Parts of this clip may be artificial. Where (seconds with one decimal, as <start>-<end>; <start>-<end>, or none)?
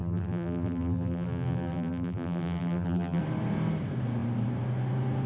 0.0-3.2